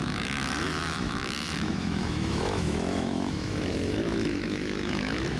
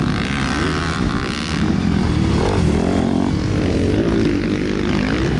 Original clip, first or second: second